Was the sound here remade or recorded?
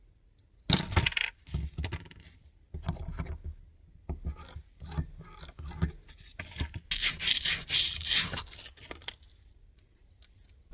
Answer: recorded